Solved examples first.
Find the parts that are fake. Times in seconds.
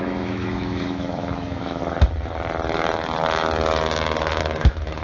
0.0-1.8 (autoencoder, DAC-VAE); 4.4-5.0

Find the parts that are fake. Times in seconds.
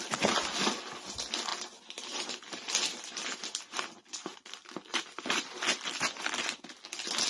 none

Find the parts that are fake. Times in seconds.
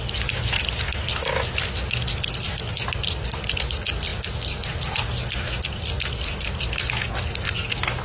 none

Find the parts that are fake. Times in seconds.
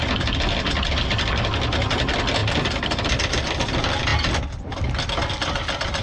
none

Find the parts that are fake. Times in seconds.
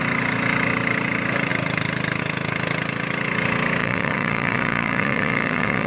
3.8-5.9 (vocoder, Vocos)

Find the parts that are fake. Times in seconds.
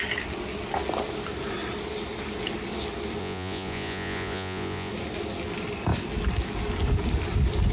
3.2-4.9 (vocoder, Vocos)